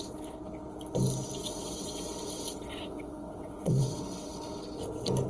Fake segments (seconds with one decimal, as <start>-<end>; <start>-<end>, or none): 1.4-4.6